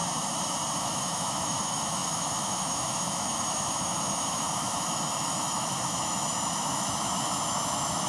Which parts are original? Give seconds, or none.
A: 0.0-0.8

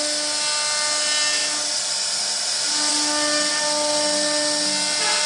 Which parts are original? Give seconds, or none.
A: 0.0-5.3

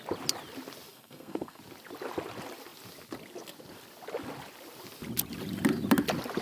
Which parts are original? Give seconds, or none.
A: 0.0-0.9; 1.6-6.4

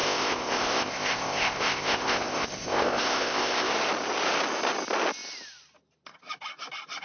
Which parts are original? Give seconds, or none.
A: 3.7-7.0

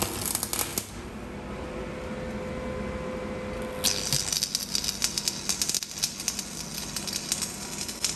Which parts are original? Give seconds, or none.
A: 0.0-8.2

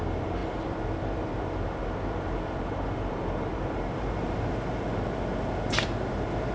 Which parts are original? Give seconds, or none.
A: none

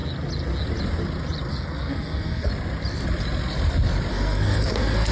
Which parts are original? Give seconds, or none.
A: 0.0-1.5; 2.5-4.1

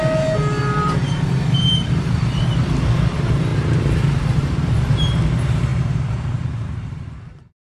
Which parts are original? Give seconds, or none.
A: 0.0-0.6; 2.4-3.5; 5.2-5.7